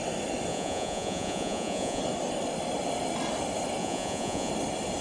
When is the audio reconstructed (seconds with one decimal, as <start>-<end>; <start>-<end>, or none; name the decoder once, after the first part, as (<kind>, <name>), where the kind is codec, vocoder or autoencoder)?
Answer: 0.5-2.0 (vocoder, Vocos); 3.8-4.5